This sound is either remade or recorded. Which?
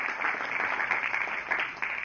recorded